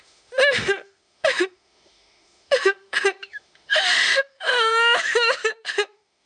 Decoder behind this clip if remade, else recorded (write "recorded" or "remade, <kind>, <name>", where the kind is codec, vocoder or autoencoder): remade, autoencoder, DAC-VAE